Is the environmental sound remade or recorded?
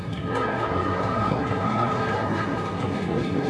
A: remade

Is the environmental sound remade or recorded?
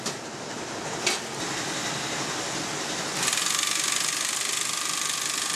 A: recorded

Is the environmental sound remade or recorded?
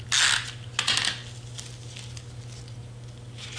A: recorded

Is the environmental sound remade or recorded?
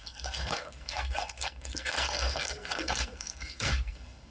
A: remade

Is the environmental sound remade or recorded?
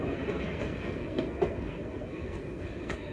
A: remade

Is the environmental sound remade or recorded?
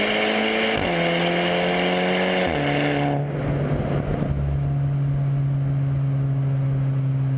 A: recorded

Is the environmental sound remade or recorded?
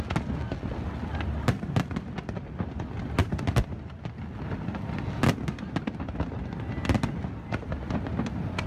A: recorded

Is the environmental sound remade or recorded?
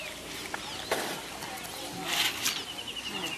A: recorded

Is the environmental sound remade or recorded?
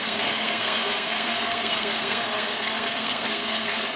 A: remade